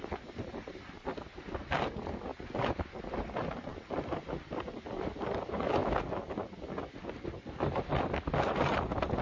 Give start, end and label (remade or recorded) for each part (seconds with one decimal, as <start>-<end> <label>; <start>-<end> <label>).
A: 0.0-9.2 recorded